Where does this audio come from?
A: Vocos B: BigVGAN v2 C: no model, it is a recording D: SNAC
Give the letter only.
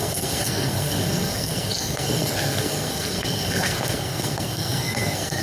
D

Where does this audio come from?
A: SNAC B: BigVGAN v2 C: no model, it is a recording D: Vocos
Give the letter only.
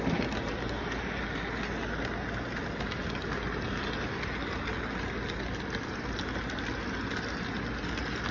C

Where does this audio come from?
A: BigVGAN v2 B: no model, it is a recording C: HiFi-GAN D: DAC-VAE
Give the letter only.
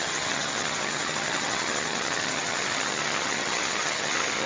C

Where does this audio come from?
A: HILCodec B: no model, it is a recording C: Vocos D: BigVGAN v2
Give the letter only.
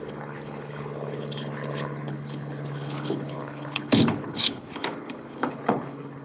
A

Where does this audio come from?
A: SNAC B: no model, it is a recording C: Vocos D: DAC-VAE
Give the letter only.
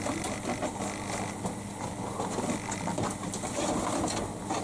B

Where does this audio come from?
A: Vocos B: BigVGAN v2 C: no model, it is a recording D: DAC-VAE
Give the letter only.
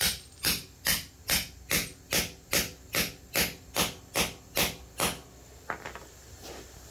C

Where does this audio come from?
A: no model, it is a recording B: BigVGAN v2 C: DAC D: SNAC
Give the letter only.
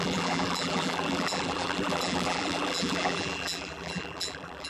B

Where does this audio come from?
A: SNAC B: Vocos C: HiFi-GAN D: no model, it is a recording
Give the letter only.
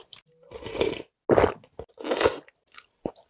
D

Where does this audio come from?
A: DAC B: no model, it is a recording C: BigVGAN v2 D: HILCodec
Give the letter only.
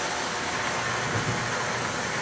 B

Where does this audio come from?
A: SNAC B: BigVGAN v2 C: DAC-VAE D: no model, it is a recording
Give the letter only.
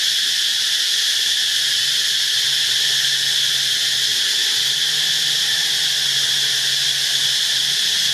D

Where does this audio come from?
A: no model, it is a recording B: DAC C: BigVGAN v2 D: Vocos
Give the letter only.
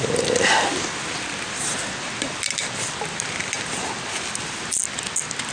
A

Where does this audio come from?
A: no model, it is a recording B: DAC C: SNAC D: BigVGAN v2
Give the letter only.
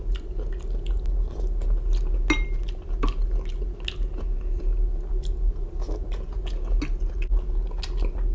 A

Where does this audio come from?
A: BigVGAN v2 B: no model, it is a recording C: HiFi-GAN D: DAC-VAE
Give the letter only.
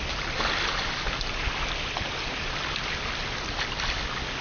B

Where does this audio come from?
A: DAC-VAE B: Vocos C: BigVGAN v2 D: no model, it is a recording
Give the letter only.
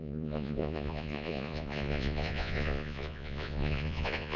B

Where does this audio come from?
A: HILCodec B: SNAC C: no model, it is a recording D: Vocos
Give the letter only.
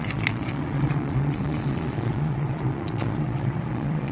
D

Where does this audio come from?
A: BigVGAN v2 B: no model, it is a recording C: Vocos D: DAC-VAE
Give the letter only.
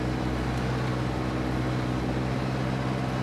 B